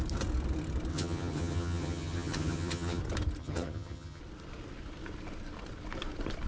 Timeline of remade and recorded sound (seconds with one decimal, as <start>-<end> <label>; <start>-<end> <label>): 0.0-0.9 recorded; 0.9-3.0 remade; 3.0-3.4 recorded; 3.4-4.2 remade; 4.2-6.5 recorded